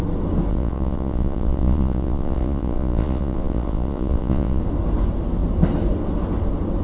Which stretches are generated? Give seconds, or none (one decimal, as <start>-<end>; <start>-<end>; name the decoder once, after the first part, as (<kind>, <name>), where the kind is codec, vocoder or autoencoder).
0.5-4.6 (vocoder, Vocos)